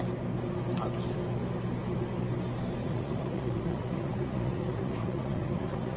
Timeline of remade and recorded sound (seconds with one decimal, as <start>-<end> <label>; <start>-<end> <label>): 0.0-2.8 recorded; 2.8-6.0 remade